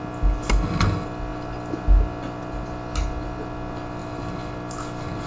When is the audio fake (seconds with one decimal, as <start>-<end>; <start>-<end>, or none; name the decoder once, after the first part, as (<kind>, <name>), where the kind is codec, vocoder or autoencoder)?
none